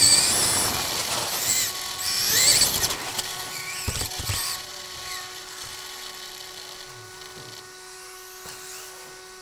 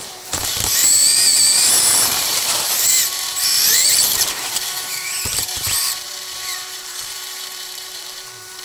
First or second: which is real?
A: first